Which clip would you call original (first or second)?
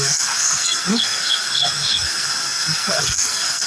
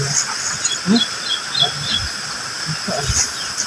second